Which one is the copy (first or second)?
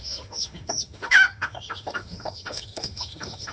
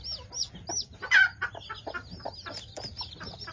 first